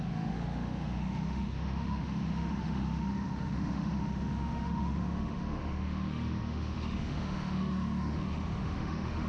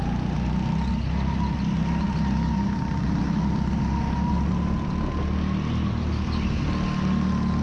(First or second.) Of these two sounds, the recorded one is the second